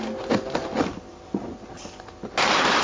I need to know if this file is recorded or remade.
recorded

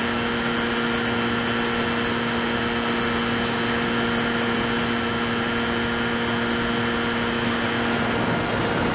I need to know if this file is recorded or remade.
recorded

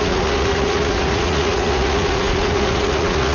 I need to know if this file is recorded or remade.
remade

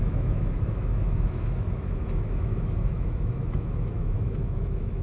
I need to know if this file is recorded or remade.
remade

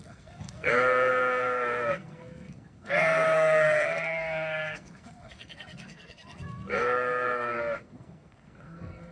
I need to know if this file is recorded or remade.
remade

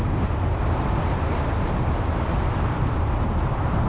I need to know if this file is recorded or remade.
remade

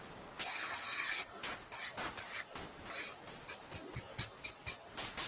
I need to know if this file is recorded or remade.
recorded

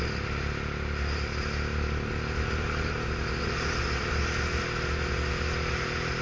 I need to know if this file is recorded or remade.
recorded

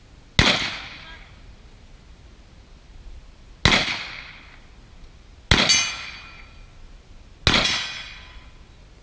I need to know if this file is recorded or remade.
recorded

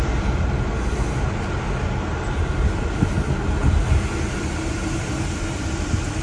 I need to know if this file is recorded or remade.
recorded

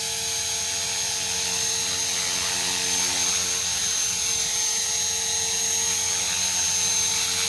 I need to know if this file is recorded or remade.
recorded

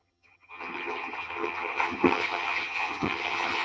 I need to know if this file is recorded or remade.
remade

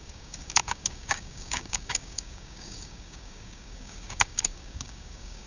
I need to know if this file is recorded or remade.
remade